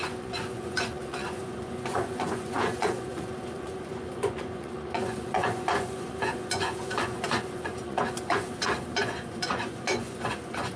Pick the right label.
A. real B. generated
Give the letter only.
B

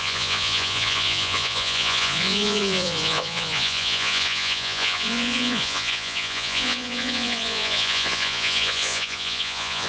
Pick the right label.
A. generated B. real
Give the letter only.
A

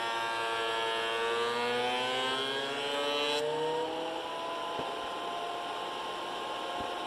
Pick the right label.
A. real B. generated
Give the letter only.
A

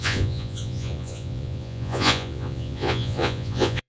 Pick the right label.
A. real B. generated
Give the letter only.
B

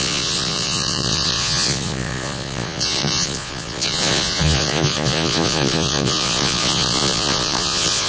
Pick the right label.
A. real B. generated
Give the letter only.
B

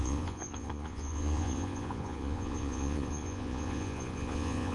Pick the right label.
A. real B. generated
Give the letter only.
B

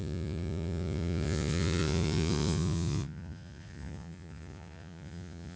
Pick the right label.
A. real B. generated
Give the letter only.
B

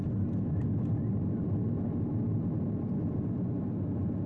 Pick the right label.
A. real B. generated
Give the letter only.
A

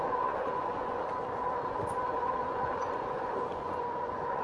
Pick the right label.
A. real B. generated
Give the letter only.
B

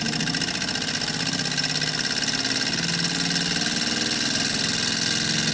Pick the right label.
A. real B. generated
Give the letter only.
A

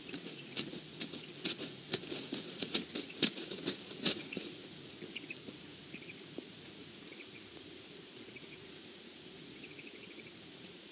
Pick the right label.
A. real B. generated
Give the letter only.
B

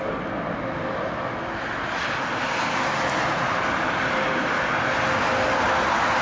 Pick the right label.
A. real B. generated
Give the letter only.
A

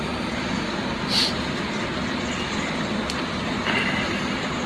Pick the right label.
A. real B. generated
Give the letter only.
A